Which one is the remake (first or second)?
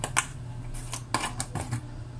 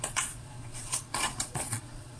second